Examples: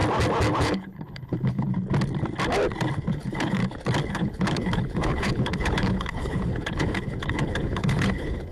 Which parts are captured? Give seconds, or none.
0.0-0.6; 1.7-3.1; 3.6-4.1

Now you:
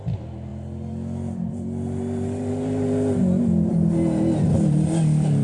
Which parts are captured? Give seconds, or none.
0.0-5.4

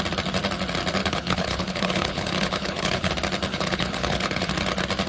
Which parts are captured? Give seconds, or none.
0.0-1.0; 3.1-3.5; 4.5-5.1

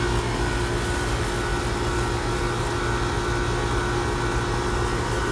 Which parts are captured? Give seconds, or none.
0.0-5.3

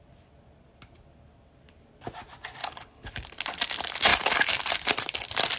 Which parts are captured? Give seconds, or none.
0.0-2.6; 3.1-5.6